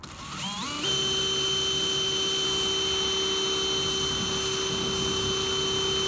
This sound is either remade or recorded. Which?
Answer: recorded